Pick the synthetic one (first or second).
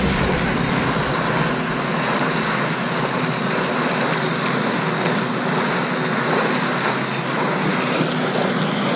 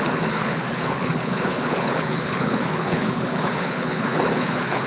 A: second